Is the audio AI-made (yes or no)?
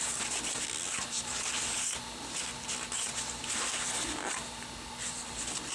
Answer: no